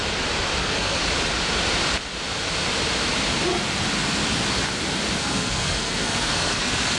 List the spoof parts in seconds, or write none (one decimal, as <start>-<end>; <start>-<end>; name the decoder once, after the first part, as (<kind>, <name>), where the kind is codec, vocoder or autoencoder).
0.6-1.0 (codec, SNAC); 5.2-7.0